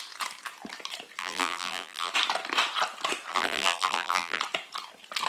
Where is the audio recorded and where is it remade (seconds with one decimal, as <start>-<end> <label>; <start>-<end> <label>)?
0.0-1.2 recorded; 1.2-2.1 remade; 2.1-3.3 recorded; 3.3-4.4 remade; 4.4-5.3 recorded